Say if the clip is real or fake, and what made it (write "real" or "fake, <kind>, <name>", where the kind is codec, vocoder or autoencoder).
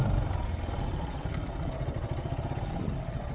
real